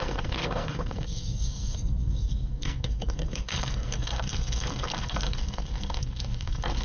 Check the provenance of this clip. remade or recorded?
remade